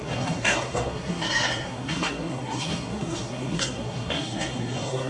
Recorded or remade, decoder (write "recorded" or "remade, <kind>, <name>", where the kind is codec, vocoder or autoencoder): remade, codec, SNAC